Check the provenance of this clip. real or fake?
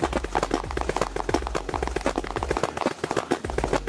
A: real